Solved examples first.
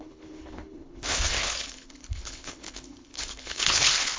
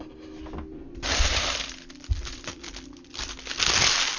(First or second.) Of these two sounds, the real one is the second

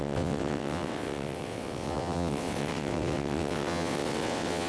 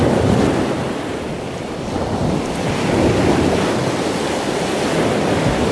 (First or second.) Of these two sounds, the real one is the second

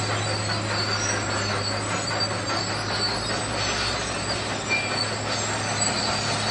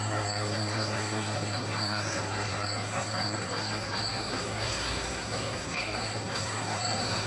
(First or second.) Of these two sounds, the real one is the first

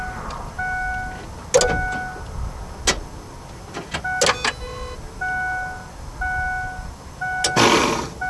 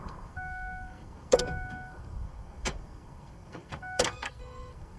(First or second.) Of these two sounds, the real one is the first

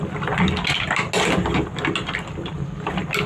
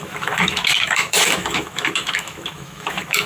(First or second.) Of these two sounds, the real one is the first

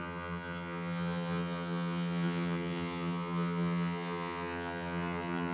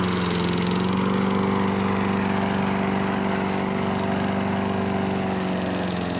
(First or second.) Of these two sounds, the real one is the second